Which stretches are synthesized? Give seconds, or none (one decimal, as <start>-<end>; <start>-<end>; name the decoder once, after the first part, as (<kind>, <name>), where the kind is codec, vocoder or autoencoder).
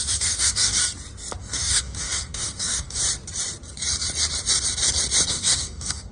0.0-0.8 (codec, DAC); 1.4-3.0; 5.3-6.1